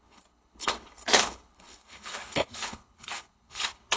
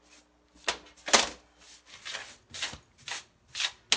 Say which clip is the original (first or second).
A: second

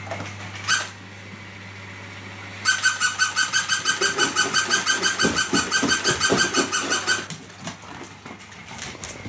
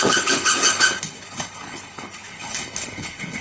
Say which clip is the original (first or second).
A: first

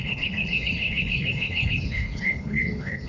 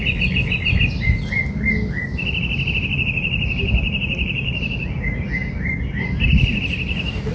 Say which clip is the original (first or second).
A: second